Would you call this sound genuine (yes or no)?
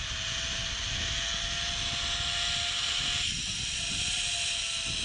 yes